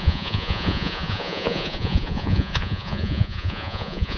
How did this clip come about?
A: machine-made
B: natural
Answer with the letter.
A